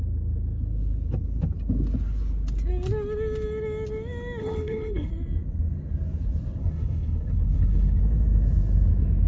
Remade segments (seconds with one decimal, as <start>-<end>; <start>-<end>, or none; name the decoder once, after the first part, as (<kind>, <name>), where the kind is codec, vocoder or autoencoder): 4.4-5.1 (codec, HILCodec); 6.6-8.0